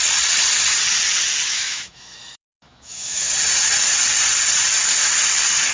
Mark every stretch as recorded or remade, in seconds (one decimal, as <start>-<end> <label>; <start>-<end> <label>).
0.0-1.5 recorded; 1.5-3.3 remade; 3.3-5.7 recorded